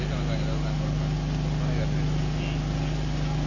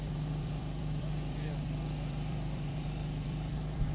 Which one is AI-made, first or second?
second